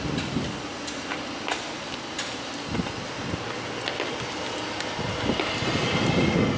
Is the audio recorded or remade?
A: recorded